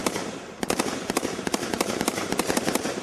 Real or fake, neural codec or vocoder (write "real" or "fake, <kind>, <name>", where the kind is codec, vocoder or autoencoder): fake, vocoder, BigVGAN v2